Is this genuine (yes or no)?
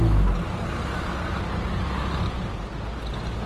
yes